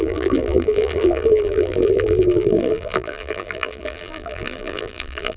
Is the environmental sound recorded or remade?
remade